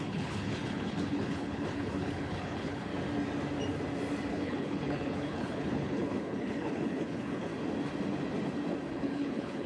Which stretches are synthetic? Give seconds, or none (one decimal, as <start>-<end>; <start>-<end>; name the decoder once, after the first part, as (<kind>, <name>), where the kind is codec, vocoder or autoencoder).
0.0-2.9 (codec, HILCodec); 4.3-7.5; 8.9-9.7